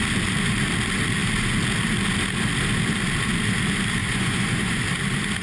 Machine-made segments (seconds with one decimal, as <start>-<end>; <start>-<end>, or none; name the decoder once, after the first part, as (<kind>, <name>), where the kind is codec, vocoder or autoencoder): 4.0-4.8 (vocoder, Vocos)